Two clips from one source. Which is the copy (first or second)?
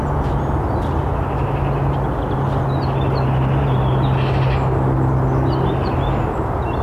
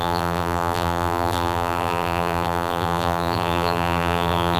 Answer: second